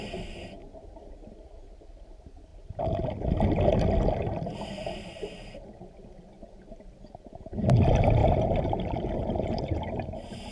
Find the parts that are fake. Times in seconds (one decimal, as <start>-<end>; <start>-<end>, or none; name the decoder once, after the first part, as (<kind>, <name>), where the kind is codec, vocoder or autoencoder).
8.2-9.8 (vocoder, BigVGAN v2)